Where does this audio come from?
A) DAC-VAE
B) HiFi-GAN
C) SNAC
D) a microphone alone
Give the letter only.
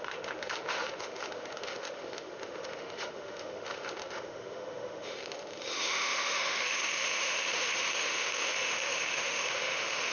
A